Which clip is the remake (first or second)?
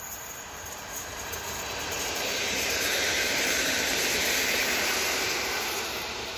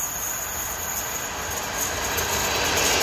first